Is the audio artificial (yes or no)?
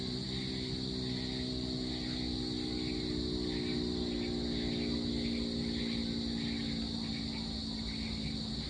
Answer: no